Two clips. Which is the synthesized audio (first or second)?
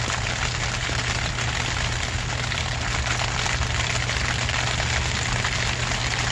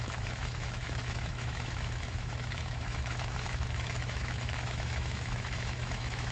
second